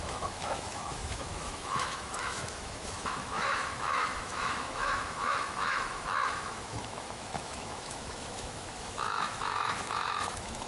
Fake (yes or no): yes